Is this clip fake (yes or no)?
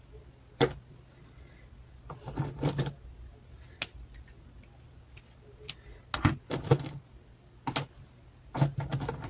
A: no